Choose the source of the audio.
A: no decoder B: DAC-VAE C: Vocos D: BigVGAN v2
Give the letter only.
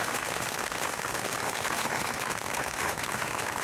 B